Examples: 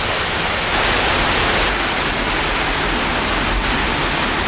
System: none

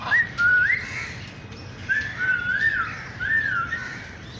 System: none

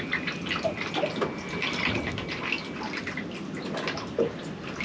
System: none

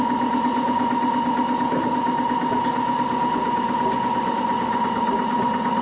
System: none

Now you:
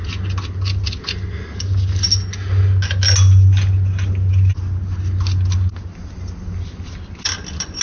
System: none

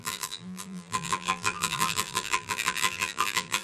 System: vocoder, BigVGAN v2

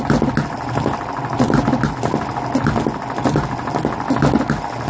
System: none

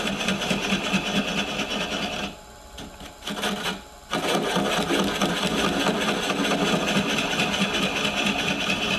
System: none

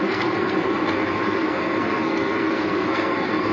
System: codec, SNAC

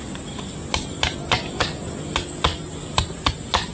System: none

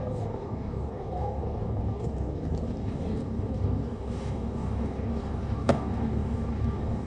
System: codec, DAC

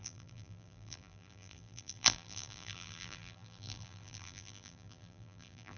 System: vocoder, BigVGAN v2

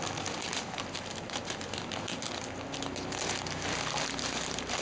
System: none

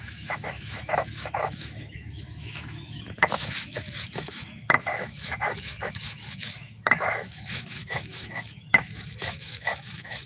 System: autoencoder, DAC-VAE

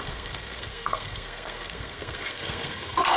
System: codec, SNAC